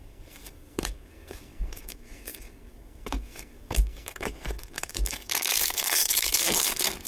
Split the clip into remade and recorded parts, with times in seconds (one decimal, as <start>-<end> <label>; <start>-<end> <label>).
0.0-7.1 remade